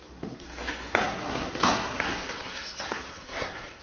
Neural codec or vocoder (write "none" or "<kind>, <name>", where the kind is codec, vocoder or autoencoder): codec, SNAC